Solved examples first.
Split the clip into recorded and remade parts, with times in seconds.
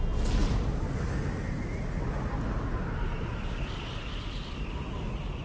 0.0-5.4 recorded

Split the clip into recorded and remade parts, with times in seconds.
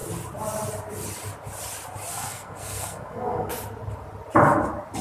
0.0-2.1 recorded; 2.1-3.5 remade; 3.5-5.0 recorded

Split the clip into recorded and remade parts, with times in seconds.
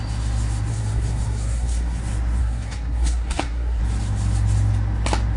0.0-0.7 recorded; 0.7-2.0 remade; 2.0-2.4 recorded; 2.4-3.8 remade; 3.8-5.4 recorded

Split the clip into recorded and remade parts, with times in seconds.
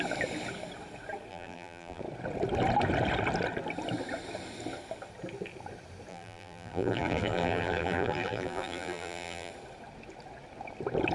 0.0-1.3 recorded; 1.3-2.0 remade; 2.0-6.1 recorded; 6.1-9.5 remade; 9.5-11.1 recorded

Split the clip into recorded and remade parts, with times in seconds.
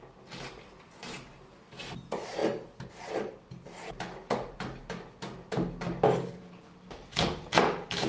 0.0-1.0 recorded; 1.0-1.8 remade; 1.8-8.1 recorded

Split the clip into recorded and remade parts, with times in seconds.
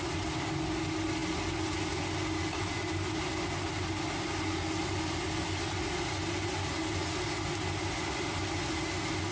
0.0-9.3 recorded